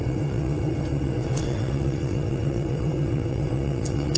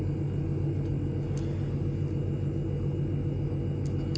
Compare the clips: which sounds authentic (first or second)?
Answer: second